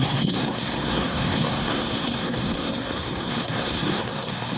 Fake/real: fake